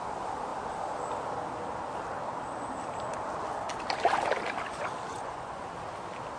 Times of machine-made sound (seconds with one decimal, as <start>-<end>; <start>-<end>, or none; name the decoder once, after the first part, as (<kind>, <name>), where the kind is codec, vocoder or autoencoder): 5.1-5.6 (vocoder, Vocos)